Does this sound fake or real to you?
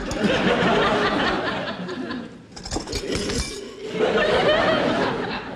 real